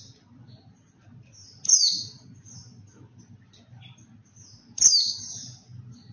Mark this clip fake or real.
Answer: real